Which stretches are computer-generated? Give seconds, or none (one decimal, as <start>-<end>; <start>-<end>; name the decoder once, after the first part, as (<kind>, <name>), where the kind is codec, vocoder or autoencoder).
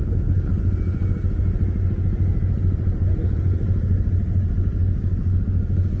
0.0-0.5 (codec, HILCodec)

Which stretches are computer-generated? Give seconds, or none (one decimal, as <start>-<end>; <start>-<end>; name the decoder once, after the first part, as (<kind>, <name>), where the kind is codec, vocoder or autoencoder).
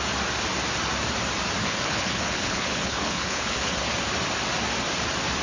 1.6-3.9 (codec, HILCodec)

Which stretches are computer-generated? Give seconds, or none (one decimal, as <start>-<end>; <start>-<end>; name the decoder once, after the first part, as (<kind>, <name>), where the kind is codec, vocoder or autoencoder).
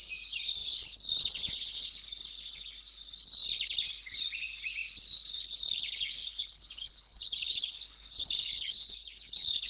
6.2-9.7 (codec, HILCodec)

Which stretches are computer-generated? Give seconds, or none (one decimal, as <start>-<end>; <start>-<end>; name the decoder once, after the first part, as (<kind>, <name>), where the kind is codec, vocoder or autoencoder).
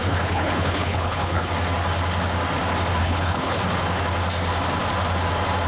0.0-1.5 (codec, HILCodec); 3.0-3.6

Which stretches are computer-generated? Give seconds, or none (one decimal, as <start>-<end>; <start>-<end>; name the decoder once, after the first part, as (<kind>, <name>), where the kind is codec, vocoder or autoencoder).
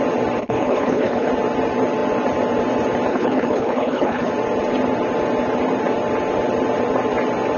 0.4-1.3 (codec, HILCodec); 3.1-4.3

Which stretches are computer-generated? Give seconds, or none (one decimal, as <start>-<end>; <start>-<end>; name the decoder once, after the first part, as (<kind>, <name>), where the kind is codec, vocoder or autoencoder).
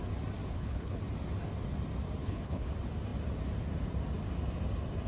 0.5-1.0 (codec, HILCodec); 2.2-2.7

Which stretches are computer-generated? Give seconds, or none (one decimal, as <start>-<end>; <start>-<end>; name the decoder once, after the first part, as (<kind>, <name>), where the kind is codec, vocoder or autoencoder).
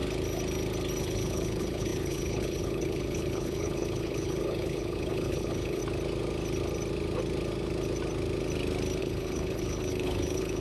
1.0-5.8 (codec, HILCodec); 9.0-10.6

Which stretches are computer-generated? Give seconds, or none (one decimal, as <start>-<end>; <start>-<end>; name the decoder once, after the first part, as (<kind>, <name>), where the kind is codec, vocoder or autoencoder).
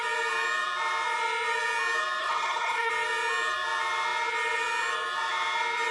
2.2-2.9 (codec, HILCodec)